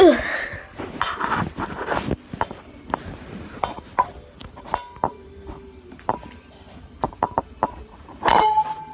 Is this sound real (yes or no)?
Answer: yes